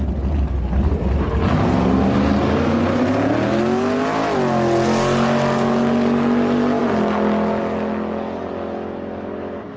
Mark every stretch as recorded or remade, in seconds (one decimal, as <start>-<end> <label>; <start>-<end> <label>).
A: 0.0-9.8 recorded

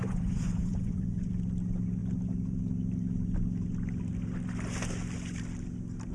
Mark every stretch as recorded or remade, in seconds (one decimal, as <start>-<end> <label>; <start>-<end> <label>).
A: 0.0-1.3 remade; 1.3-6.1 recorded